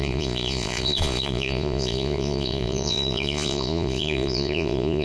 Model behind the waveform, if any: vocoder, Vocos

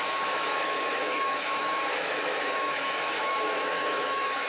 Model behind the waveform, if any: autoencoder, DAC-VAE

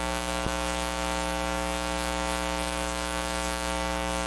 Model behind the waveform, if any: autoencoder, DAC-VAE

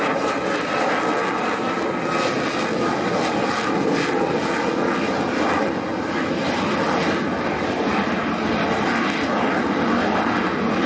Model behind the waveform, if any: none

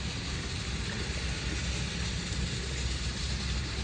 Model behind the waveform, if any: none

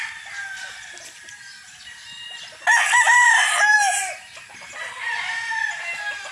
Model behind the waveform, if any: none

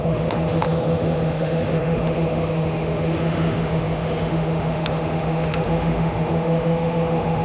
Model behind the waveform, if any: autoencoder, DAC-VAE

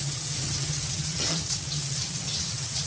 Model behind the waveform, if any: vocoder, WaveNeXt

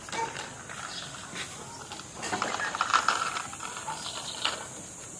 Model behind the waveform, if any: none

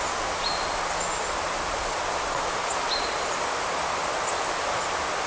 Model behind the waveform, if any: none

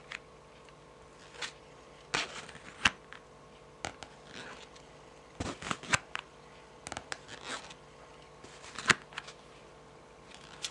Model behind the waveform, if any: none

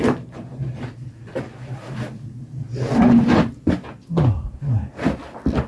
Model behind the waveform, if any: none